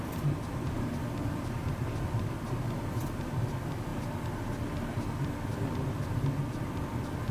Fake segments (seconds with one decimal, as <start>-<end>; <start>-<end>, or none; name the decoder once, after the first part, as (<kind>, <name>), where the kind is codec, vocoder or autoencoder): none